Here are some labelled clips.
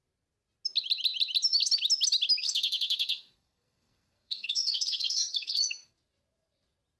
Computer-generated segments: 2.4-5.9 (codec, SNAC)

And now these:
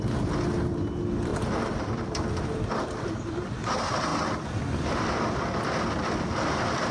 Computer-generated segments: 0.0-4.1 (vocoder, BigVGAN v2); 5.2-6.9

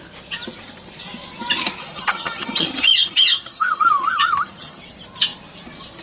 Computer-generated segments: 1.8-4.8 (vocoder, HiFi-GAN)

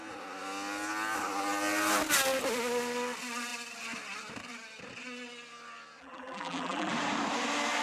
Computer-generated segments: 6.0-6.9 (vocoder, BigVGAN v2)

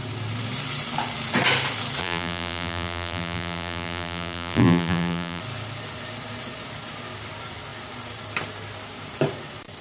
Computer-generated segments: 2.0-5.4 (vocoder, BigVGAN v2)

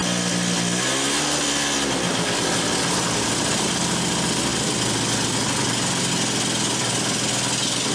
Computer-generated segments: none

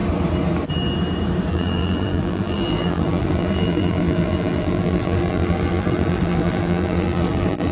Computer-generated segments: 1.5-7.7 (vocoder, BigVGAN v2)